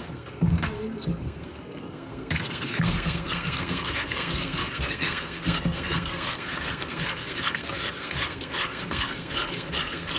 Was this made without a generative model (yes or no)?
no